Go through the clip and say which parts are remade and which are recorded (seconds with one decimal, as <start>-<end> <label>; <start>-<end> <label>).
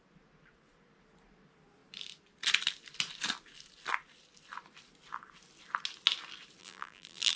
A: 0.0-6.6 recorded; 6.6-7.4 remade